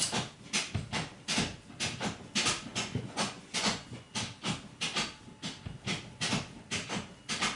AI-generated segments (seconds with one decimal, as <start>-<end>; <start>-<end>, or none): 2.7-4.1